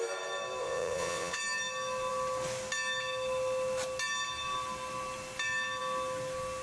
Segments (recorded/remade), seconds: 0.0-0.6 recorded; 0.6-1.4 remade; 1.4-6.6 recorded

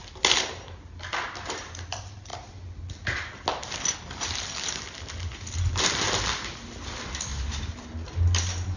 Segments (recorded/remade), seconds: 0.0-7.3 recorded; 7.3-7.9 remade; 7.9-8.8 recorded

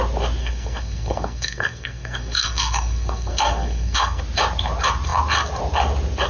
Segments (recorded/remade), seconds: 0.0-0.4 recorded; 0.4-4.2 remade; 4.2-6.3 recorded

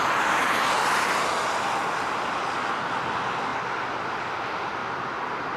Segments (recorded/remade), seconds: 0.0-4.8 recorded; 4.8-5.6 remade

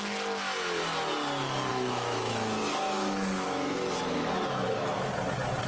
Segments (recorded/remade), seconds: 0.0-1.7 recorded; 1.7-5.1 remade; 5.1-5.7 recorded